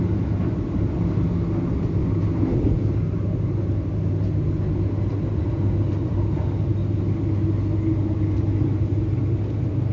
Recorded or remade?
recorded